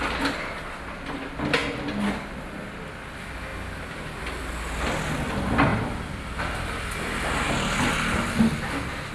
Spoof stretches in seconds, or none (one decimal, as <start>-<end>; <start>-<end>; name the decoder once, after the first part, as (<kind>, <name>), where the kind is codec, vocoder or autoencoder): none